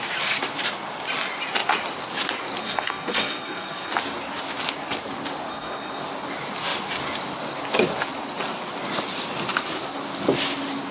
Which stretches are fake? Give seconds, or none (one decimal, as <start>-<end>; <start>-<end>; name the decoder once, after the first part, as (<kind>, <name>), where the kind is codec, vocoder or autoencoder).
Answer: 2.6-3.9 (codec, SNAC); 5.5-6.0